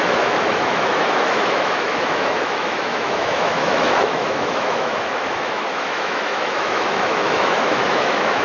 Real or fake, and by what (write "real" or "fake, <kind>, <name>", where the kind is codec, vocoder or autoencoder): fake, autoencoder, DAC-VAE